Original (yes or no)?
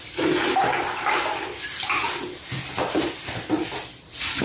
yes